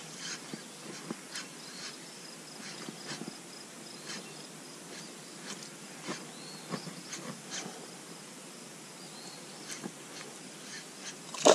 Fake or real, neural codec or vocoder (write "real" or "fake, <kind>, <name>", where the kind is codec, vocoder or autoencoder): real